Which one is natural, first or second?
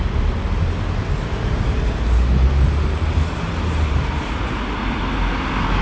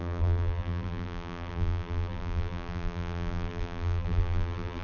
first